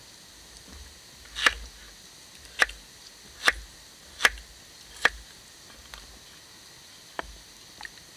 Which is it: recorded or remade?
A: recorded